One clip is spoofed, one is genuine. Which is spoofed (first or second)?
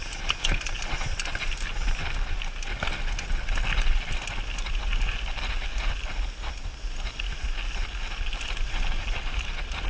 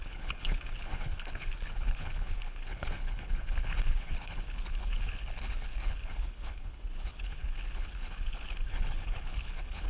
second